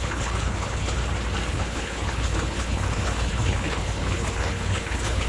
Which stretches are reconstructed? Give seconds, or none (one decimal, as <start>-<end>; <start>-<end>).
0.0-1.0; 1.5-5.3